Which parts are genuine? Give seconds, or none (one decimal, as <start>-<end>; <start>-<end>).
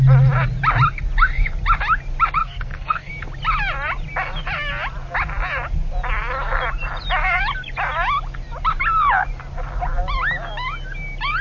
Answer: 0.0-2.4; 3.1-11.4